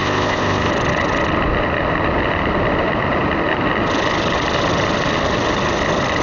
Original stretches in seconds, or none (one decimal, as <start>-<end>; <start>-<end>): 0.7-6.2